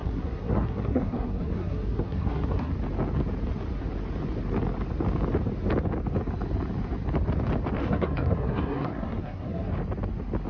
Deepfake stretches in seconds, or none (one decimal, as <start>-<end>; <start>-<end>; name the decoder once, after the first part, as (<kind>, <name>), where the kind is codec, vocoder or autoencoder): 0.0-2.7 (codec, SNAC); 7.8-9.7